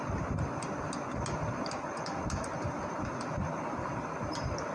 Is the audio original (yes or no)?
yes